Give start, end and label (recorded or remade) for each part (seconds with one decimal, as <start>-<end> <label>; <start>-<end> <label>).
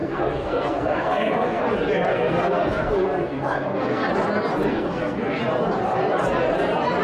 0.0-1.6 remade; 1.6-2.1 recorded; 2.1-4.1 remade; 4.1-4.7 recorded; 4.7-5.4 remade; 5.4-7.0 recorded